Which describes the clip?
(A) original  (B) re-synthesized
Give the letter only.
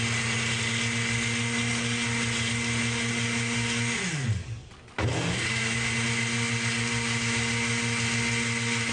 A